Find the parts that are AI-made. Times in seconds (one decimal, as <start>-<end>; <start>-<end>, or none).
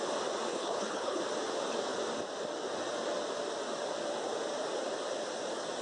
0.5-1.2